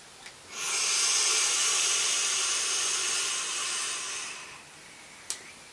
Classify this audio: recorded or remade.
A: recorded